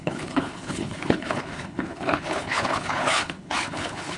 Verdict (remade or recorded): remade